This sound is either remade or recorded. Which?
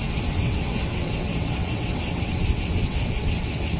remade